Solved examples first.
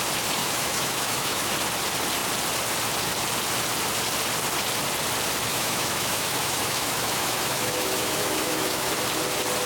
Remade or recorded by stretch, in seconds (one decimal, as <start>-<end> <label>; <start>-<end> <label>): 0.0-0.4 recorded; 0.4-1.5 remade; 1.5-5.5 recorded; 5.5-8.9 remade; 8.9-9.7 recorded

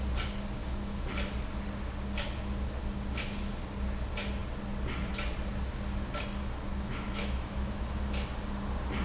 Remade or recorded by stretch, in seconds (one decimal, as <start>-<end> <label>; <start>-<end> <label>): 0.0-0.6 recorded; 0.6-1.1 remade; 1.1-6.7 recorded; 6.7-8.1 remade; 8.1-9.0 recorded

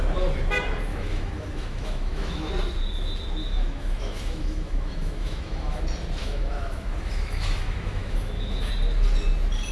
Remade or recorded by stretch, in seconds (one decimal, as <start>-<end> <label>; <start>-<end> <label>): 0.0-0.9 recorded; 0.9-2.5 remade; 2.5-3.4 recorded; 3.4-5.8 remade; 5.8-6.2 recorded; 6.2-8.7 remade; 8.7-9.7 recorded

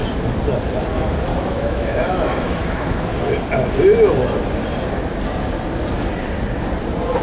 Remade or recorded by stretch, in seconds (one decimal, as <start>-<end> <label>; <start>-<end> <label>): 0.0-1.3 recorded; 1.3-3.1 remade; 3.1-7.2 recorded

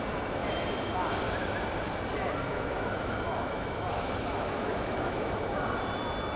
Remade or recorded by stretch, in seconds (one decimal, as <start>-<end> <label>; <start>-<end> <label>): 0.0-2.5 recorded; 2.5-5.4 remade; 5.4-6.4 recorded